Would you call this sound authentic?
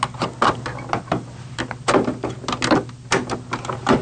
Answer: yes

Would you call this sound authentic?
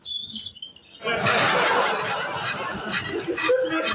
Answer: yes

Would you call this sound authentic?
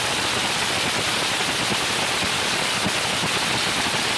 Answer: yes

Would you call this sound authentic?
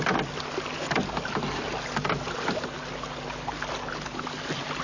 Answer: yes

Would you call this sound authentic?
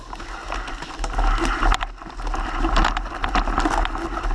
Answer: yes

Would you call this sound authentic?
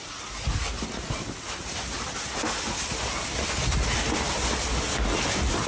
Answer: yes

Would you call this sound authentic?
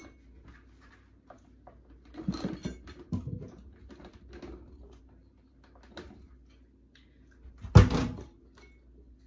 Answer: yes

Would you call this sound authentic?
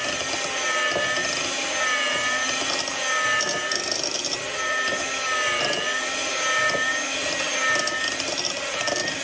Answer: yes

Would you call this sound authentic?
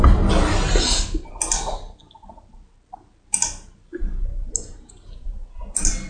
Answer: yes